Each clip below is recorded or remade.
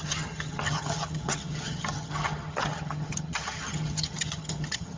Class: remade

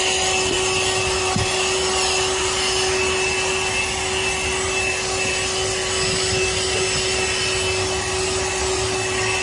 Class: recorded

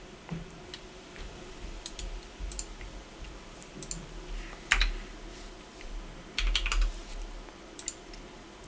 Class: recorded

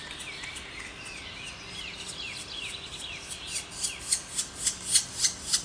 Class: recorded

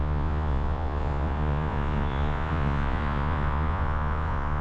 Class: remade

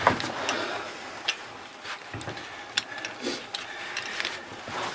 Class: recorded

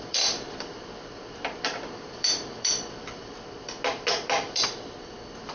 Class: remade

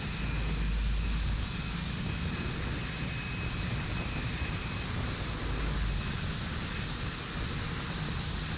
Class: recorded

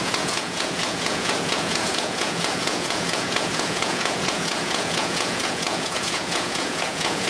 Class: remade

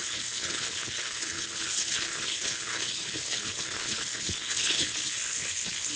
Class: remade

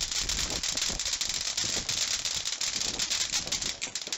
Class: recorded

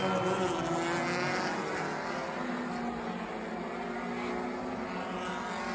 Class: recorded